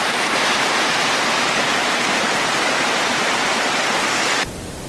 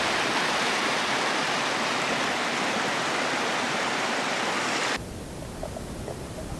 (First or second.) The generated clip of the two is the first